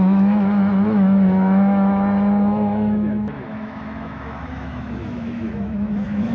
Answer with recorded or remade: remade